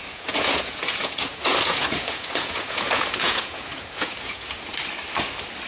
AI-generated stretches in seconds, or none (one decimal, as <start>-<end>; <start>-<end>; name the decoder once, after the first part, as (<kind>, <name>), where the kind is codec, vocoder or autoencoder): 0.0-4.7 (vocoder, Vocos)